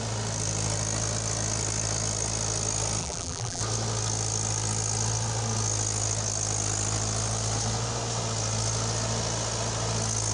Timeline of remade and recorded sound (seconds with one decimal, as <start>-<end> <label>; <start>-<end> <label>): 0.0-3.0 recorded; 3.0-3.6 remade; 3.6-10.3 recorded